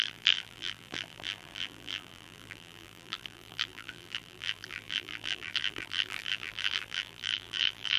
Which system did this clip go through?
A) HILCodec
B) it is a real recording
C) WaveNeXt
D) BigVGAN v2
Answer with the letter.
D